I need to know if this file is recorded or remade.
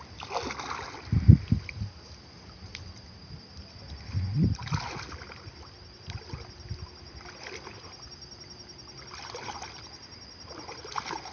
recorded